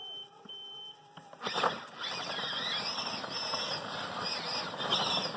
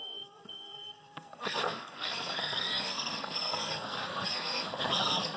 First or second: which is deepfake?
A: second